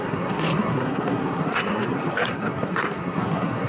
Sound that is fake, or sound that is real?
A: fake